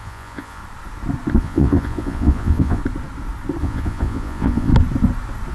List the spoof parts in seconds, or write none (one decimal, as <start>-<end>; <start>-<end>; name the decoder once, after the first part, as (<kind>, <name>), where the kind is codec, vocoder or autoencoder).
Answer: 0.0-0.6 (vocoder, Vocos); 1.4-2.8; 3.6-4.7